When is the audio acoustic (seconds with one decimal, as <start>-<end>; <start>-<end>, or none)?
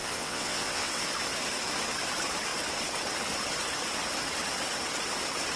1.0-5.6